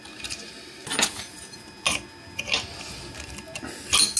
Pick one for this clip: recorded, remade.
recorded